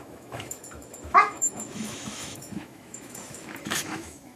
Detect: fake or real fake